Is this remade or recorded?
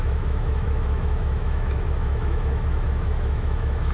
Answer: remade